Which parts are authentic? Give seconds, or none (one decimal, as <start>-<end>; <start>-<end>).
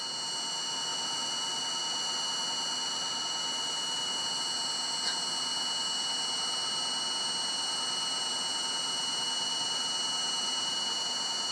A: 0.0-11.5